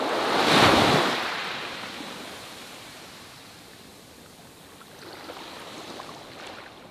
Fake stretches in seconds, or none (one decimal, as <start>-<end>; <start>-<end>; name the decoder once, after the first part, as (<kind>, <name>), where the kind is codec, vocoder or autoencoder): 0.0-3.9 (vocoder, BigVGAN v2); 6.5-6.9

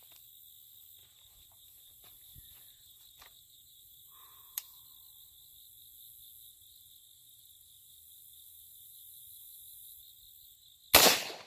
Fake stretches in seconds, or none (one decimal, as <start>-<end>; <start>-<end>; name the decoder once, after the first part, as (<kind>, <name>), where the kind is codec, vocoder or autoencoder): 1.0-4.8 (vocoder, BigVGAN v2)

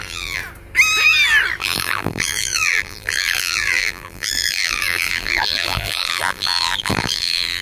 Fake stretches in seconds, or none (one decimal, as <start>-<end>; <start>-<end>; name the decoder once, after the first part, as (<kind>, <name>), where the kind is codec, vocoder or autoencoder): 0.0-0.4 (vocoder, BigVGAN v2); 1.6-7.6

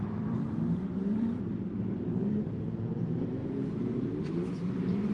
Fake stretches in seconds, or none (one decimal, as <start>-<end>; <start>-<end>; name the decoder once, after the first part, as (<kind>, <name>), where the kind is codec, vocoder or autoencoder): 0.0-5.1 (vocoder, BigVGAN v2)